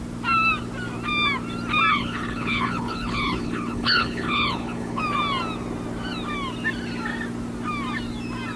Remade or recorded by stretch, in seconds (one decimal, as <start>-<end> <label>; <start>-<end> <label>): 0.0-1.9 recorded; 1.9-5.0 remade; 5.0-8.6 recorded

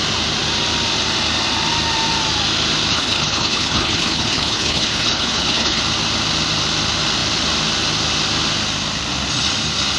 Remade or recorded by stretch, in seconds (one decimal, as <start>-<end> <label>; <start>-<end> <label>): 0.0-2.9 recorded; 2.9-5.8 remade; 5.8-10.0 recorded